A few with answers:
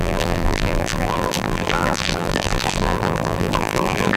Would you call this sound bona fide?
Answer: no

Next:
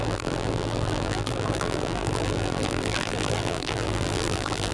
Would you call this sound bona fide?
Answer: no